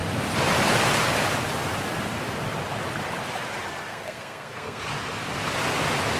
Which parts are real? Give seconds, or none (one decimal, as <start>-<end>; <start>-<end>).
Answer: 0.0-3.9; 4.8-6.2